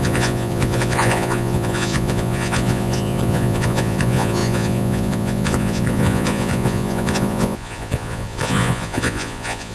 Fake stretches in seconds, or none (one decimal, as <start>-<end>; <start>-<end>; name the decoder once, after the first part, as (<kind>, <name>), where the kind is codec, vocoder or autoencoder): 0.0-9.7 (vocoder, Vocos)